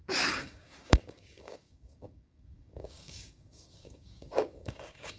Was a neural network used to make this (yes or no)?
yes